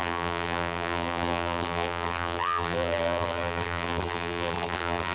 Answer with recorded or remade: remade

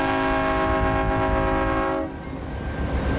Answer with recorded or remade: recorded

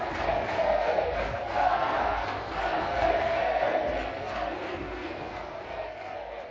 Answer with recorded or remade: remade